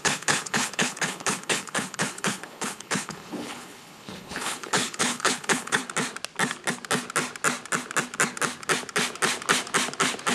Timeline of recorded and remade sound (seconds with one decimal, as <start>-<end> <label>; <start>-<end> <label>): 0.0-5.8 remade; 5.8-10.3 recorded